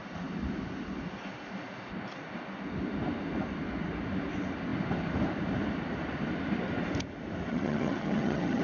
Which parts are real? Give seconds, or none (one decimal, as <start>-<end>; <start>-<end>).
0.0-7.5